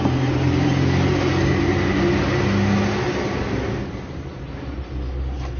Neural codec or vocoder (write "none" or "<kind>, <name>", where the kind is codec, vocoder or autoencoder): none